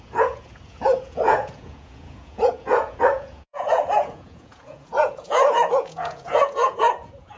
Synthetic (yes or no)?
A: yes